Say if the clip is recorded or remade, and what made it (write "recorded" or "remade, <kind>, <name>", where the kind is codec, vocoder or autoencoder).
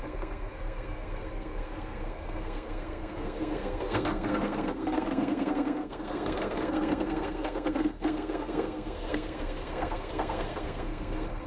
remade, codec, SNAC